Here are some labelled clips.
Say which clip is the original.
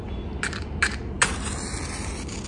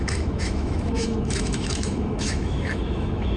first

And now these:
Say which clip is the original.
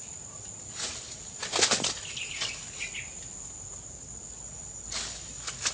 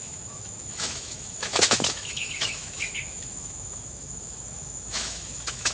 first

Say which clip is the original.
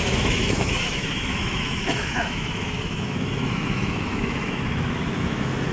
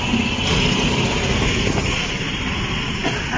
second